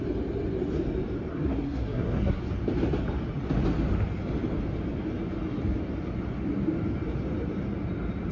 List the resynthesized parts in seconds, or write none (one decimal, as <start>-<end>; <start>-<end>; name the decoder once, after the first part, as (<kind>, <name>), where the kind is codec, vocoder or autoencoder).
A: 1.3-2.4 (codec, SNAC)